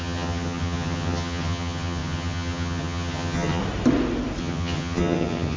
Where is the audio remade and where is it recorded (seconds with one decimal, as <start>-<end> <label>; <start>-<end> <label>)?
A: 0.0-3.6 remade; 3.6-4.4 recorded; 4.4-5.6 remade